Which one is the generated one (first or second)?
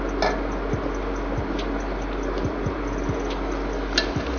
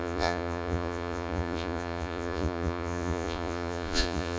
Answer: second